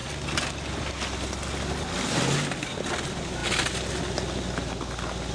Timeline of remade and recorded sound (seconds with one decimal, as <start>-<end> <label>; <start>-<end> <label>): 0.0-5.3 recorded